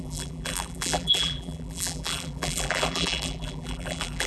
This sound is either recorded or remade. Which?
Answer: remade